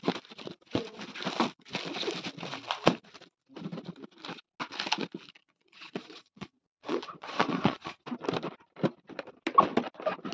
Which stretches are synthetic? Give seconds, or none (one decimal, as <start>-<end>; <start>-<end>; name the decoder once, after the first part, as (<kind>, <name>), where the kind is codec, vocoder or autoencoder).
5.4-8.0 (vocoder, Vocos)